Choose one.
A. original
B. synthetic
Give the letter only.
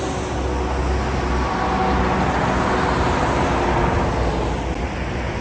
A